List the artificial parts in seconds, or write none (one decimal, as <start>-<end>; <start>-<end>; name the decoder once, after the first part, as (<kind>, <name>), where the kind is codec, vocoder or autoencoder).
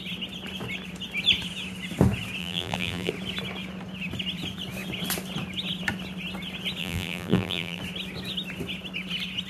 2.4-3.1 (vocoder, BigVGAN v2); 6.8-7.8